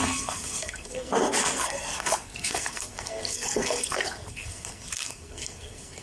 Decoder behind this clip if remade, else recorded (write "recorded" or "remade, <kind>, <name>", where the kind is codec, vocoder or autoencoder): remade, codec, SNAC